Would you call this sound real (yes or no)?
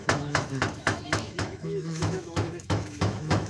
no